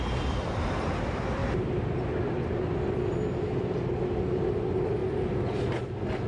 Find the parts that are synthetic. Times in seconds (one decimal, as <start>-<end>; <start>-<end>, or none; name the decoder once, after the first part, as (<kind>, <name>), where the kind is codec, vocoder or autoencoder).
none